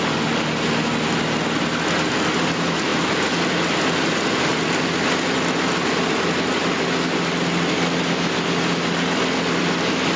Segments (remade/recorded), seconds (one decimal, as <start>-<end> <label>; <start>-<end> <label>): 0.0-10.2 recorded